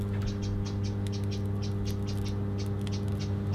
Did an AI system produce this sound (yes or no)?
no